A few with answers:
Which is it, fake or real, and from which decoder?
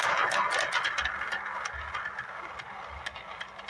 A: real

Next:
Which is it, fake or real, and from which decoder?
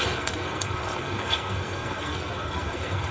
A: fake, codec, SNAC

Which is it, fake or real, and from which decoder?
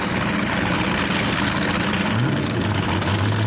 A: real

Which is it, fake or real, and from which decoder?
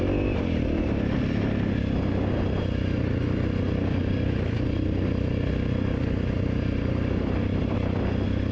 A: real